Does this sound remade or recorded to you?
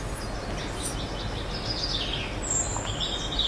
recorded